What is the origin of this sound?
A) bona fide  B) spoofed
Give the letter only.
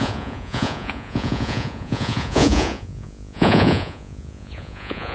B